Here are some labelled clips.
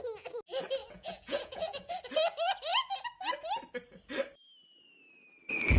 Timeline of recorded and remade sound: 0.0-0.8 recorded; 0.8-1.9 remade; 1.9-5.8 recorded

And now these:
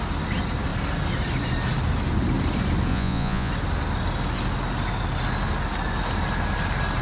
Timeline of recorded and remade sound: 0.0-2.9 recorded; 2.9-3.5 remade; 3.5-7.0 recorded

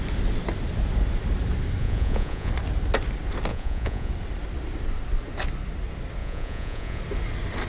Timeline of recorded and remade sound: 0.0-1.8 recorded; 1.8-2.5 remade; 2.5-3.5 recorded; 3.5-4.1 remade; 4.1-6.2 recorded; 6.2-7.0 remade; 7.0-7.7 recorded

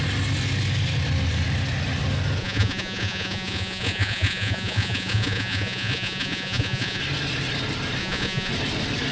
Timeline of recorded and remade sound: 0.0-2.4 recorded; 2.4-7.0 remade; 7.0-8.0 recorded; 8.0-8.5 remade; 8.5-9.1 recorded

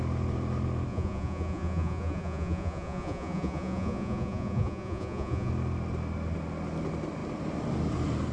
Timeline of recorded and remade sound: 0.0-0.9 recorded; 0.9-5.5 remade; 5.5-8.3 recorded